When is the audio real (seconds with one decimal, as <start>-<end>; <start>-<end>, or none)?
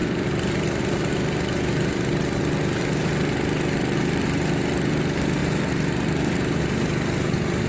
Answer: 0.0-7.7